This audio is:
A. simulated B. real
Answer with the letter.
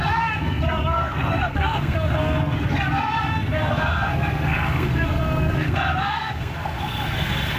A